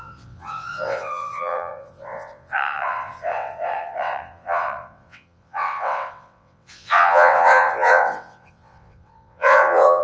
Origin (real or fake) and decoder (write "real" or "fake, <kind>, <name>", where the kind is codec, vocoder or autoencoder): fake, vocoder, WaveNeXt